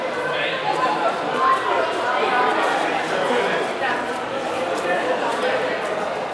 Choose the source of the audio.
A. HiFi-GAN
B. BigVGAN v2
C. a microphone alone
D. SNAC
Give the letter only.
B